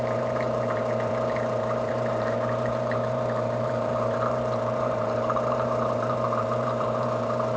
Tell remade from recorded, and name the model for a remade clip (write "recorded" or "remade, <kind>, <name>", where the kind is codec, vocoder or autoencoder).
remade, vocoder, BigVGAN v2